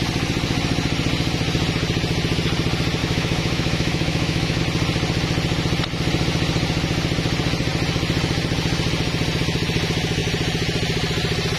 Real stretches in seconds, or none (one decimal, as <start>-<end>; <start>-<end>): 0.0-3.0; 4.6-11.6